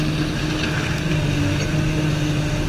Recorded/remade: recorded